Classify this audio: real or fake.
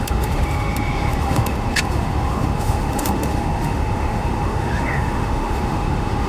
fake